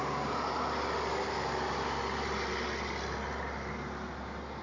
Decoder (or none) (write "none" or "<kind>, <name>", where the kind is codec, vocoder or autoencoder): none